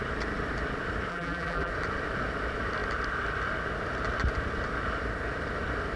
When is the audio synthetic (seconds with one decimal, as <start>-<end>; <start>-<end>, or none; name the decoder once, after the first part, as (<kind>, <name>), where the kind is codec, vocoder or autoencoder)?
1.1-1.7 (vocoder, BigVGAN v2)

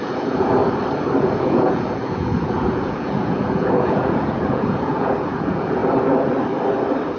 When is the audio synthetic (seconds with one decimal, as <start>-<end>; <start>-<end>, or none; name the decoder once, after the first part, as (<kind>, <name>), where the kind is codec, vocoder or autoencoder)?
0.0-0.6 (vocoder, Vocos); 1.2-5.8

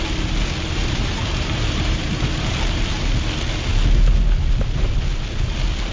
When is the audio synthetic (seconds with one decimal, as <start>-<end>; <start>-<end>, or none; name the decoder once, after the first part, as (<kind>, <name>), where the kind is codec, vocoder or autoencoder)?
0.8-2.1 (vocoder, BigVGAN v2)

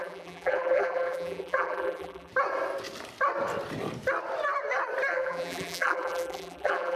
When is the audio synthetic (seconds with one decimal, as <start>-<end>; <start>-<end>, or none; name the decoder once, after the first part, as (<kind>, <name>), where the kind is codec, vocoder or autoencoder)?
0.0-2.3 (vocoder, BigVGAN v2); 5.1-7.0